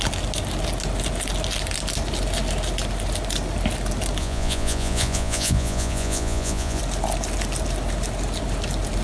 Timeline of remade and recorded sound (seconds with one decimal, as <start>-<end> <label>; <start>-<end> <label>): 0.0-4.2 recorded; 4.2-6.8 remade; 6.8-9.0 recorded